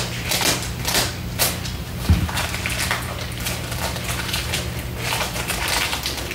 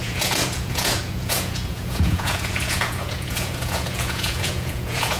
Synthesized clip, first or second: second